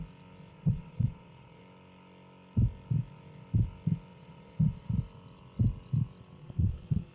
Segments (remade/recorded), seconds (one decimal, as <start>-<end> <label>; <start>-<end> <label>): 0.0-0.5 recorded; 0.5-1.6 remade; 1.6-4.1 recorded; 4.1-4.9 remade; 4.9-6.4 recorded; 6.4-7.1 remade